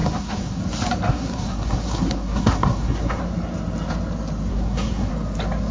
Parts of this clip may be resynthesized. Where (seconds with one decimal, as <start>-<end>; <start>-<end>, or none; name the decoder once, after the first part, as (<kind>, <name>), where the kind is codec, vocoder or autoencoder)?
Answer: 0.0-0.6 (codec, SNAC); 1.1-3.2; 4.5-5.1